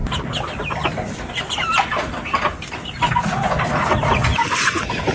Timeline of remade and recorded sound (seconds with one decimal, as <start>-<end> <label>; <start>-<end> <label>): 0.0-5.1 recorded